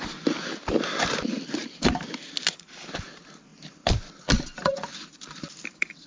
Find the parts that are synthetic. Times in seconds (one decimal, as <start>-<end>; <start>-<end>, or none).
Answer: none